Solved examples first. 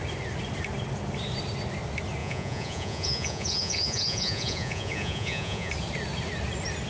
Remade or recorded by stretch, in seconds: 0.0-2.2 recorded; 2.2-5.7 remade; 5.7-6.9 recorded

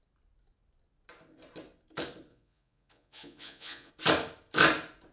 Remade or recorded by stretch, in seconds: 0.0-2.3 recorded; 2.3-3.9 remade; 3.9-5.1 recorded

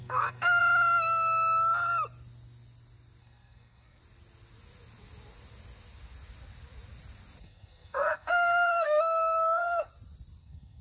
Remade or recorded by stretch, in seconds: 0.0-0.6 remade; 0.6-3.2 recorded; 3.2-4.0 remade; 4.0-7.4 recorded; 7.4-9.9 remade; 9.9-10.4 recorded; 10.4-10.8 remade

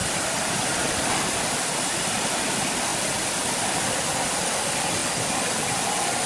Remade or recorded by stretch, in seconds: 0.0-5.0 remade; 5.0-6.3 recorded

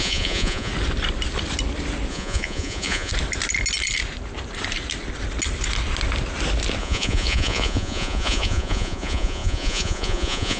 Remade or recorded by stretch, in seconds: 0.0-0.7 remade; 0.7-2.1 recorded; 2.1-3.1 remade; 3.1-6.8 recorded; 6.8-10.6 remade